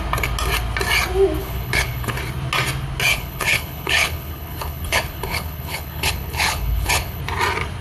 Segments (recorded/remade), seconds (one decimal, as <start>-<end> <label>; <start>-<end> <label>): 0.0-1.4 recorded; 1.4-2.1 remade; 2.1-3.1 recorded; 3.1-7.2 remade; 7.2-7.8 recorded